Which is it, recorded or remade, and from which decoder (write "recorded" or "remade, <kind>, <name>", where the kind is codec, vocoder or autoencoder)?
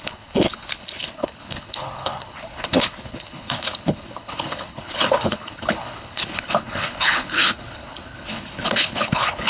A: remade, codec, HILCodec